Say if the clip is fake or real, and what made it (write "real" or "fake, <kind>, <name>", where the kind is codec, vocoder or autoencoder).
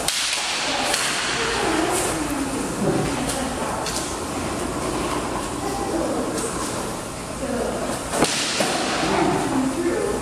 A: real